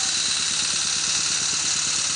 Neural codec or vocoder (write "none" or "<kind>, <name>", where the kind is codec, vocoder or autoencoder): none